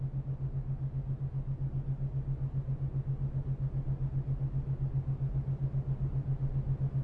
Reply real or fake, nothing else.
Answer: real